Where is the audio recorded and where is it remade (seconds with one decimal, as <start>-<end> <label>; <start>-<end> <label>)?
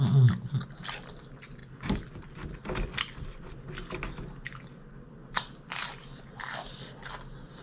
0.0-7.6 recorded